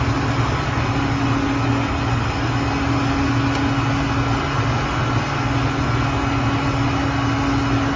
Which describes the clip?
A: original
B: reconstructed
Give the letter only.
A